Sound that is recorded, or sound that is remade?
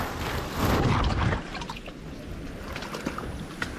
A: recorded